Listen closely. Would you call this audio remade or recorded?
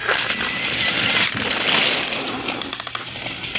recorded